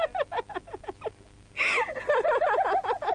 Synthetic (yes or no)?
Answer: no